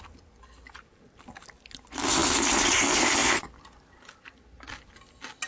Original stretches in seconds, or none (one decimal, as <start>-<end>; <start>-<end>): 0.0-5.5